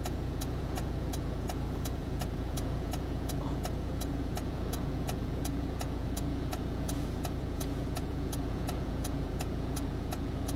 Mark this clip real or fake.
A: fake